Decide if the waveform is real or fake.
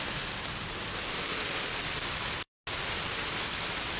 real